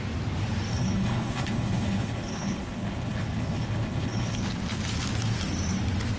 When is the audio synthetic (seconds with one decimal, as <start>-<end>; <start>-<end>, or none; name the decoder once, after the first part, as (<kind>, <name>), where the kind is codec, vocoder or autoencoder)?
0.7-4.4 (codec, HILCodec)